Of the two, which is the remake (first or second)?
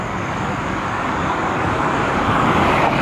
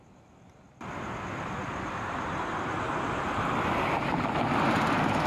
first